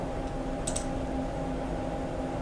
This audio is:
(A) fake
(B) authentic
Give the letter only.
B